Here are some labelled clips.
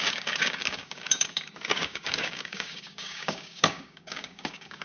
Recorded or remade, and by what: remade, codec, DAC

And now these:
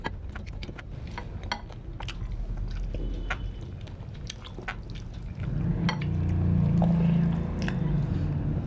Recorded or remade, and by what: recorded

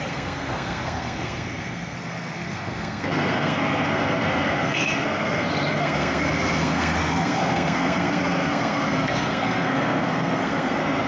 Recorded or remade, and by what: remade, codec, SNAC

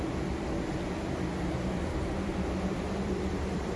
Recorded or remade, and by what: remade, vocoder, BigVGAN v2